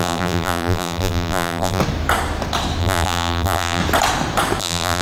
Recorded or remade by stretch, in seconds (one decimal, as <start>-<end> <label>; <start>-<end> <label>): 0.0-1.8 remade; 1.8-2.8 recorded; 2.8-3.8 remade; 3.8-4.6 recorded; 4.6-5.0 remade